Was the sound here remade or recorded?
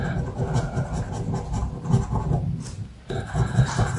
recorded